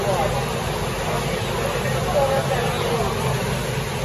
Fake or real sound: real